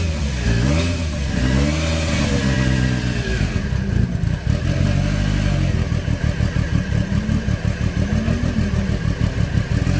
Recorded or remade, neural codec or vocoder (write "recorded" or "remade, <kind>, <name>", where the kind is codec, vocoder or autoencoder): recorded